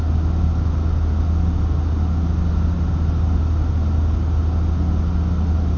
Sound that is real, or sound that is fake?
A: real